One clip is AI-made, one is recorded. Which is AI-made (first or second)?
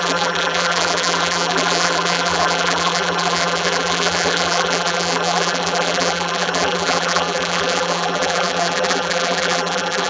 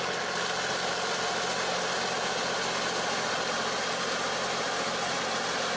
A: first